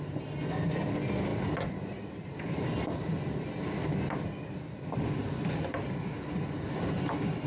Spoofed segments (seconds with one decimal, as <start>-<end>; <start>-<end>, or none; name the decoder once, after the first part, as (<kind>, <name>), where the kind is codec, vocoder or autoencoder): none